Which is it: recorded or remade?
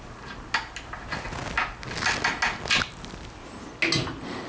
recorded